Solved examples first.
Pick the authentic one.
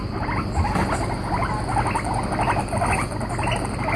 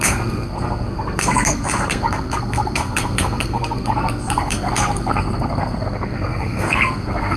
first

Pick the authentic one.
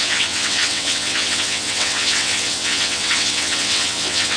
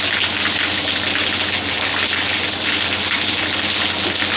second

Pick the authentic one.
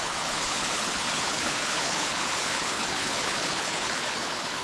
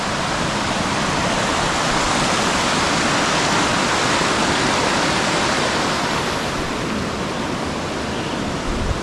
second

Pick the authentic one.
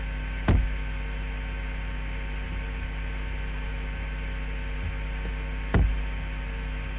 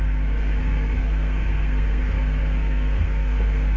first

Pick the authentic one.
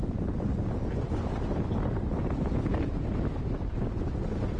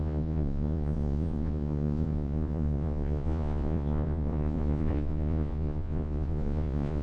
first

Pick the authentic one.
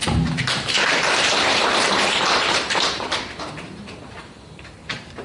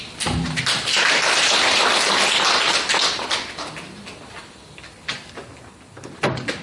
second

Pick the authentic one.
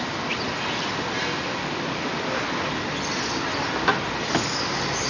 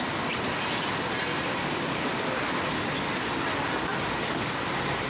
first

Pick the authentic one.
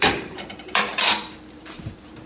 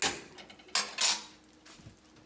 second